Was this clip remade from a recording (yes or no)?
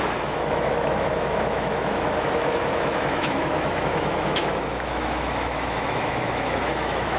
yes